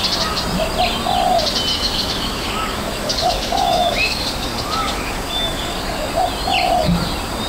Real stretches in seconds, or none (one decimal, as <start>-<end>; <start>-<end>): 0.0-1.7; 6.1-7.5